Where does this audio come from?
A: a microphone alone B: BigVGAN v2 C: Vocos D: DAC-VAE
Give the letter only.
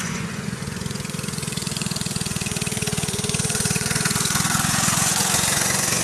C